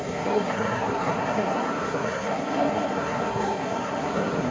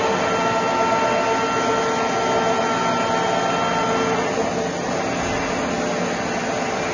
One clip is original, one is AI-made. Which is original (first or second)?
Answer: second